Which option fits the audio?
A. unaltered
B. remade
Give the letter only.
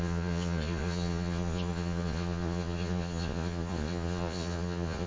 B